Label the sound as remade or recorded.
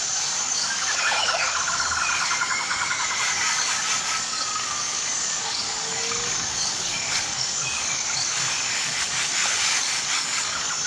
remade